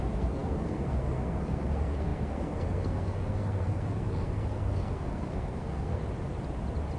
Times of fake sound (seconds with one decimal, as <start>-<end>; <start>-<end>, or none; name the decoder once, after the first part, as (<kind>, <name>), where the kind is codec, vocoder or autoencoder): 0.0-6.0 (codec, SNAC)